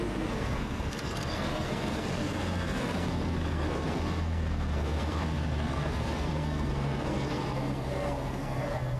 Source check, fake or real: fake